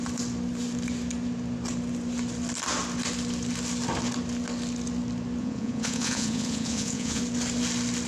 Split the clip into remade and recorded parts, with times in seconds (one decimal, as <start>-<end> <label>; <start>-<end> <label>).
0.0-5.4 recorded; 5.4-7.2 remade; 7.2-8.1 recorded